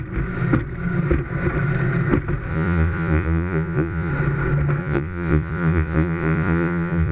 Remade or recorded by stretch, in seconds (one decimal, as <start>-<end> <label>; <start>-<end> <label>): 0.0-2.5 recorded; 2.5-4.1 remade; 4.1-4.8 recorded; 4.8-7.1 remade